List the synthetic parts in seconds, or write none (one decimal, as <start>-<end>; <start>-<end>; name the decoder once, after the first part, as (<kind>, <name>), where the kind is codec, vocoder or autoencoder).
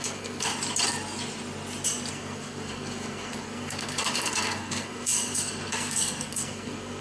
0.0-0.5 (codec, SNAC); 2.1-7.0